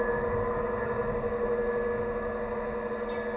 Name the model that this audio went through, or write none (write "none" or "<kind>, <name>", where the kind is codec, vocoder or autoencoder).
none